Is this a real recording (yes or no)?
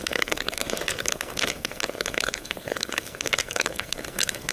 no